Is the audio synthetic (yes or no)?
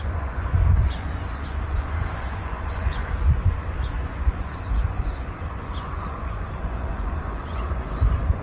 yes